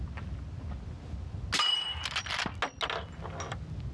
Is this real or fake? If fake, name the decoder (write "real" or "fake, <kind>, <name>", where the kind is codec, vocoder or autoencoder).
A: real